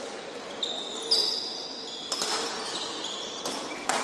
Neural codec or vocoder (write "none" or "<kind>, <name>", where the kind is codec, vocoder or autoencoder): none